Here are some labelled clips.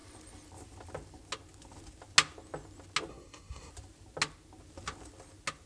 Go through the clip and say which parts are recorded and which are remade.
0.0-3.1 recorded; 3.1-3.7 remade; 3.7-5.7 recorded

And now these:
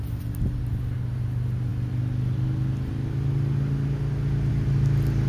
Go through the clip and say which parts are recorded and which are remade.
0.0-5.3 recorded

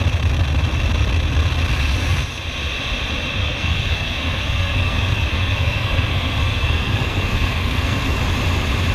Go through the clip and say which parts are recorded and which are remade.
0.0-3.4 recorded; 3.4-8.2 remade; 8.2-8.9 recorded

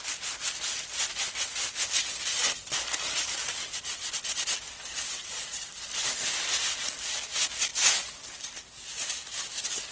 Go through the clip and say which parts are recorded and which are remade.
0.0-9.9 recorded

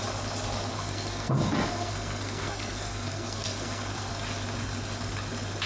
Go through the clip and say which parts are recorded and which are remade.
0.0-0.7 recorded; 0.7-4.1 remade; 4.1-5.7 recorded

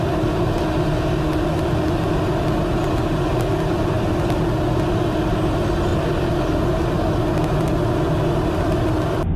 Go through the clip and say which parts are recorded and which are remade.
0.0-9.4 recorded

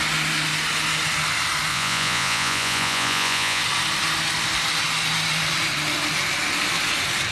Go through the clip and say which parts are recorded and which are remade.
0.0-1.7 recorded; 1.7-3.6 remade; 3.6-7.3 recorded

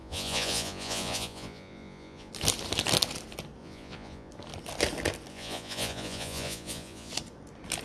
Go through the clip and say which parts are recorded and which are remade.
0.0-2.3 remade; 2.3-3.6 recorded; 3.6-4.3 remade; 4.3-5.3 recorded; 5.3-7.1 remade; 7.1-7.8 recorded